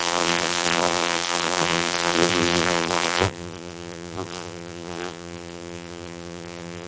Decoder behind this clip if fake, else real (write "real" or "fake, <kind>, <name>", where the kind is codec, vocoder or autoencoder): fake, vocoder, BigVGAN v2